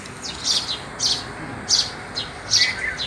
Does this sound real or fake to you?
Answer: real